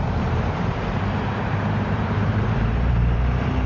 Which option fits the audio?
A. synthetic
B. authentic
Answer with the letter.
A